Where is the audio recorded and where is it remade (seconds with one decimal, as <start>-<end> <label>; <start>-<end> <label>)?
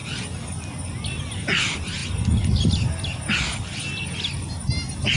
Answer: 0.0-5.2 recorded